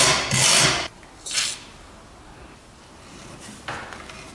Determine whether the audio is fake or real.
real